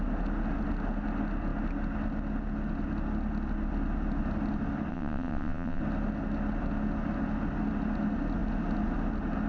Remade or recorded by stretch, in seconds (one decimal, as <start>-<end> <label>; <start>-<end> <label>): 0.0-4.9 recorded; 4.9-5.8 remade; 5.8-9.5 recorded

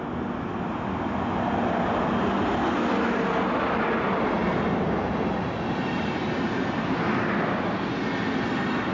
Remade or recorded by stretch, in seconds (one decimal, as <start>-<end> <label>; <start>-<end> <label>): 0.0-8.9 recorded

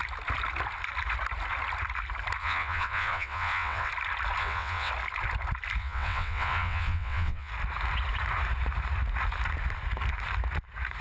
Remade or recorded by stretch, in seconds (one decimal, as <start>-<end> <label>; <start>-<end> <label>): 0.0-2.4 recorded; 2.4-3.9 remade; 3.9-4.4 recorded; 4.4-4.9 remade; 4.9-5.8 recorded; 5.8-7.5 remade; 7.5-11.0 recorded

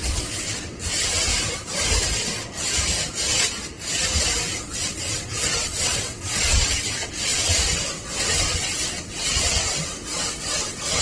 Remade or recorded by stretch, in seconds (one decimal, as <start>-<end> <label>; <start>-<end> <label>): 0.0-1.3 remade; 1.3-4.6 recorded; 4.6-11.0 remade

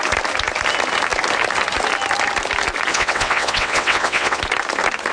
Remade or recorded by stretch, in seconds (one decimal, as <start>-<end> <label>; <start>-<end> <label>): 0.0-2.9 recorded; 2.9-4.4 remade; 4.4-5.1 recorded

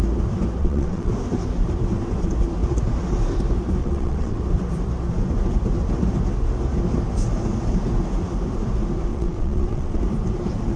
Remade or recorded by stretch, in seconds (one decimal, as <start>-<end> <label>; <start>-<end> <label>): 0.0-0.6 recorded; 0.6-1.1 remade; 1.1-3.8 recorded; 3.8-4.4 remade; 4.4-9.1 recorded; 9.1-10.0 remade; 10.0-10.8 recorded

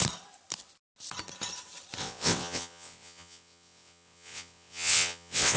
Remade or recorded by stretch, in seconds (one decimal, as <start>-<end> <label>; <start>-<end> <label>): 0.0-2.0 recorded; 2.0-5.6 remade